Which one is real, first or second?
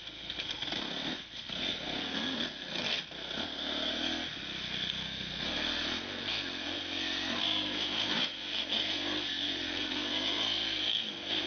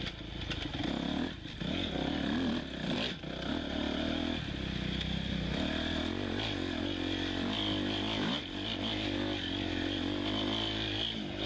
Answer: second